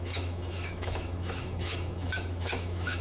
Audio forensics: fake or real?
fake